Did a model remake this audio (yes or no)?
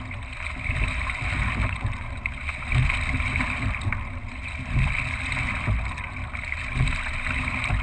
no